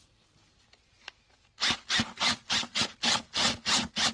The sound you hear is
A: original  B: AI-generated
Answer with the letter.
A